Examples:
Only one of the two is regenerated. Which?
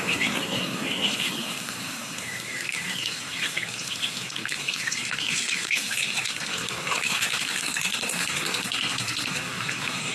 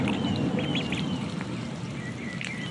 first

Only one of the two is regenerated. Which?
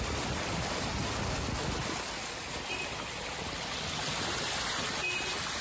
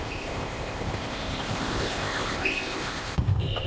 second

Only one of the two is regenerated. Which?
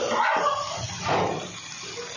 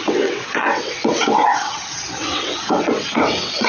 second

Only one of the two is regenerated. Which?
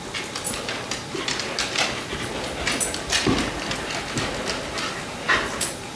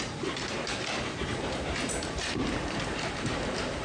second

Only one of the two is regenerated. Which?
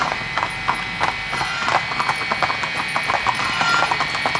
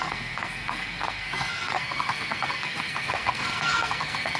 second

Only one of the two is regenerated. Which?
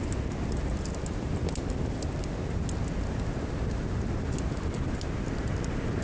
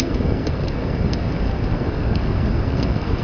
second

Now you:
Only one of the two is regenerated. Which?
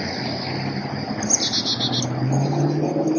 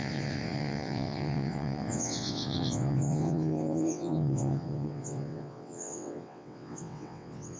second